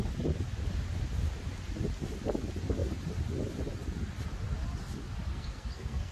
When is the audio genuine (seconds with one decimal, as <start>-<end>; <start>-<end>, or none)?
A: 0.0-5.3

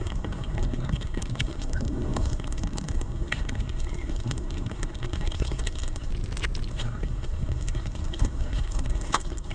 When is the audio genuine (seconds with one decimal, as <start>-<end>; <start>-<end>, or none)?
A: 6.1-6.7

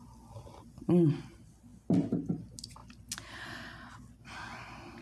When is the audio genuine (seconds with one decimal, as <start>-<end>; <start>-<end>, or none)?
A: 0.0-5.0

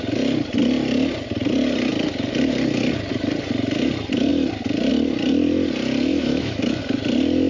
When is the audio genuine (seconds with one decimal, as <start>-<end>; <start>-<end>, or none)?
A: 0.0-6.1; 6.8-7.5

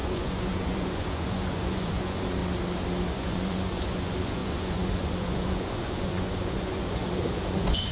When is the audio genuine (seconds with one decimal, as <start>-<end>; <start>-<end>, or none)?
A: 2.4-3.1

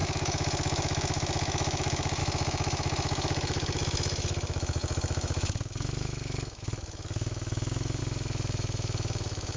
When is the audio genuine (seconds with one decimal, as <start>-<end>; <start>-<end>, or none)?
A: none

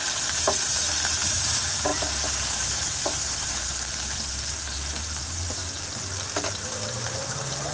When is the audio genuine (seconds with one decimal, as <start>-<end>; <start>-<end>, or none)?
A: 5.6-6.5